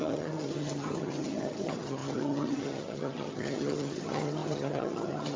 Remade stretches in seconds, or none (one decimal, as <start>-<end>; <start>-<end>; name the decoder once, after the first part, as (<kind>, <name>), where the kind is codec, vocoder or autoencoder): 0.0-5.4 (vocoder, HiFi-GAN)